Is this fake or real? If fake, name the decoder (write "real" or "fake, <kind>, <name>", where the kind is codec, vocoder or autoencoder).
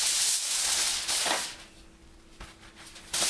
real